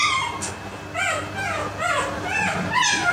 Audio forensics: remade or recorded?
recorded